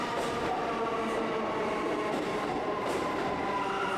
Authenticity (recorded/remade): remade